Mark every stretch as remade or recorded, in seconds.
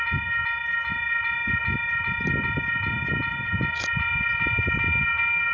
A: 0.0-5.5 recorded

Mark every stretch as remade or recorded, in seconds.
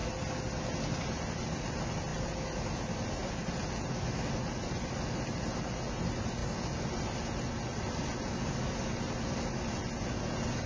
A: 0.0-10.7 recorded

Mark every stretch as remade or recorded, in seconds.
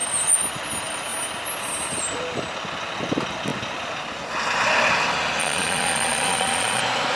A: 0.0-5.4 recorded; 5.4-6.8 remade; 6.8-7.2 recorded